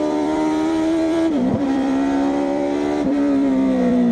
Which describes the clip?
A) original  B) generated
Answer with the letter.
B